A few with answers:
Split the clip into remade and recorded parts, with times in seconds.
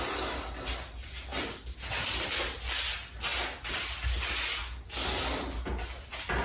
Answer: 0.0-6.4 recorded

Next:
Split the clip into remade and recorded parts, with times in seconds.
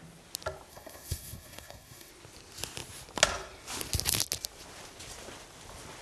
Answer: 0.0-0.7 recorded; 0.7-2.1 remade; 2.1-6.0 recorded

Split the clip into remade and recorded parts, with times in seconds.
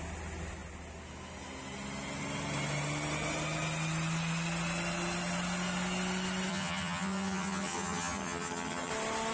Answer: 0.0-6.5 recorded; 6.5-8.9 remade; 8.9-9.3 recorded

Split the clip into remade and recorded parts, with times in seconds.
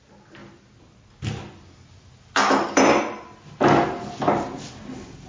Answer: 0.0-5.3 recorded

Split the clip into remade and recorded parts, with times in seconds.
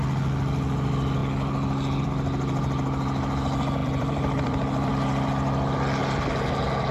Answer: 0.0-3.8 recorded; 3.8-4.9 remade; 4.9-6.9 recorded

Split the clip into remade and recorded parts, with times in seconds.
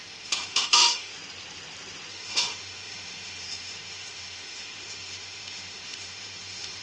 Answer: 0.0-1.1 remade; 1.1-2.1 recorded; 2.1-6.8 remade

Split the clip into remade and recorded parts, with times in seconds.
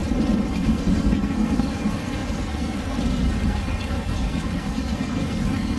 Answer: 0.0-0.5 recorded; 0.5-5.8 remade